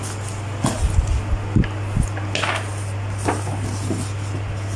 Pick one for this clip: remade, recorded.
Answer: recorded